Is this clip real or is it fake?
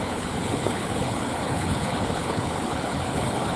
fake